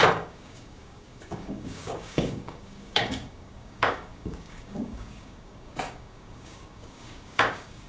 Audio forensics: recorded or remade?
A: remade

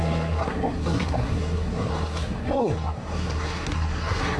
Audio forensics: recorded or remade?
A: remade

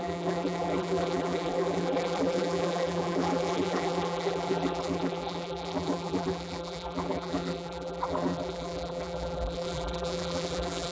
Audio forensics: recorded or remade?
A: remade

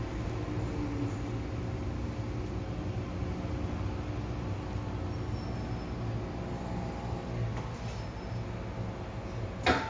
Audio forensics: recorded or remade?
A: recorded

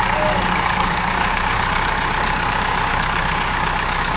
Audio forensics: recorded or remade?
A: remade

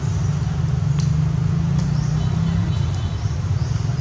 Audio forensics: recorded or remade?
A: recorded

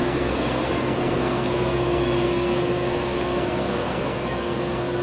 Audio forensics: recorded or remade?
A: remade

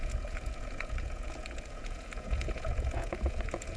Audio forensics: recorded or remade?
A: remade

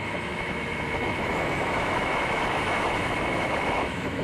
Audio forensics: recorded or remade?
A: remade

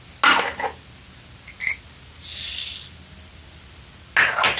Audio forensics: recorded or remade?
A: recorded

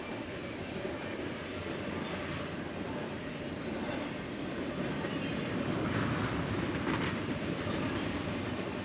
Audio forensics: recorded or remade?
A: remade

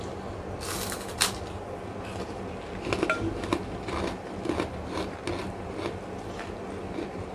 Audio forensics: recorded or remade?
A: recorded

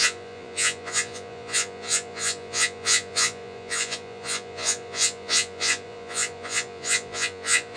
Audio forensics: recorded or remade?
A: remade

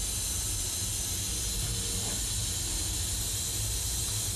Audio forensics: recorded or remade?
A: recorded